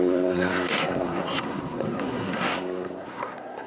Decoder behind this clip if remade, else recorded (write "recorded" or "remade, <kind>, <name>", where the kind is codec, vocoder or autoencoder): remade, codec, SNAC